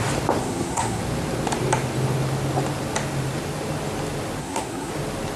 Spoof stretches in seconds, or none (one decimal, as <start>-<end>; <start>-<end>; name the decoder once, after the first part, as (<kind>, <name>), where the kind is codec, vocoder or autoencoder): 0.4-1.0 (codec, SNAC); 4.4-4.9